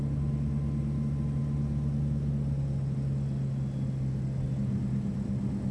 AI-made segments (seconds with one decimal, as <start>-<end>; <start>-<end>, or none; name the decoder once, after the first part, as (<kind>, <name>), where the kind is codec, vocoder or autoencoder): none